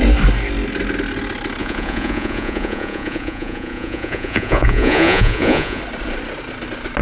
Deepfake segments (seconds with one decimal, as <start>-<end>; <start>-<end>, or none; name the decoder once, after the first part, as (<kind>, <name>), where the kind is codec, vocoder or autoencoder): 1.6-5.8 (vocoder, Vocos)

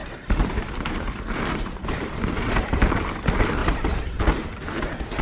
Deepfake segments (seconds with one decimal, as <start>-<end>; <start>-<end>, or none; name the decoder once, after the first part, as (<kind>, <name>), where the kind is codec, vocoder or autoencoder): 0.0-3.1 (vocoder, BigVGAN v2); 3.6-4.2

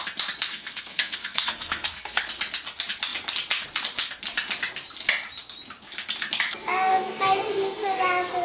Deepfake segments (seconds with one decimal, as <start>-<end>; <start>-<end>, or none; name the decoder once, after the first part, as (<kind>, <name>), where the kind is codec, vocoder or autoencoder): 0.5-2.2 (codec, SNAC); 6.9-8.0

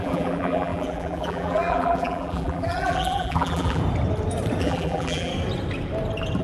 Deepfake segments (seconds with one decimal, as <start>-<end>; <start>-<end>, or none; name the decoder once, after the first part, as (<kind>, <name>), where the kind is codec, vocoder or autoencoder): 0.0-3.8 (vocoder, BigVGAN v2); 4.6-5.3

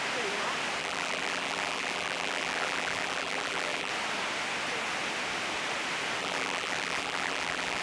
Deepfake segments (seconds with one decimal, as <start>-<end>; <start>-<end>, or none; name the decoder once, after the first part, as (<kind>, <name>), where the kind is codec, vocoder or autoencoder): 0.8-3.9 (vocoder, BigVGAN v2); 6.2-7.8

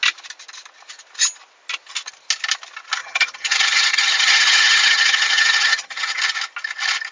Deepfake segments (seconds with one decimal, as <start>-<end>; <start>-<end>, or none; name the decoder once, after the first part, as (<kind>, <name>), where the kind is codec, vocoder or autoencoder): 3.0-6.2 (vocoder, HiFi-GAN)

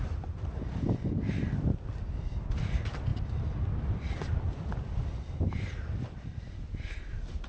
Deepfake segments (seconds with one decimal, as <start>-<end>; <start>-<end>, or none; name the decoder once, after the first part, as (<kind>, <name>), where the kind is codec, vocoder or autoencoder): none

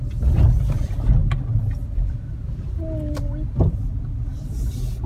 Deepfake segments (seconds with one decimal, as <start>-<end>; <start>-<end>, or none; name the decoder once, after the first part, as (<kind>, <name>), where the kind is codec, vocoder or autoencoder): none